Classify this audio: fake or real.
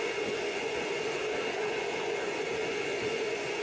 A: fake